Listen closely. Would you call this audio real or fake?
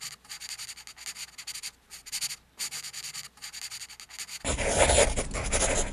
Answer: real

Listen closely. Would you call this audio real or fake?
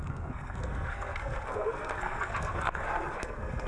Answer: fake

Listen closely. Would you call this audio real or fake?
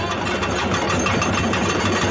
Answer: real